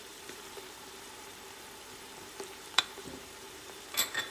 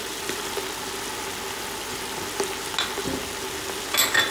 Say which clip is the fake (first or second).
first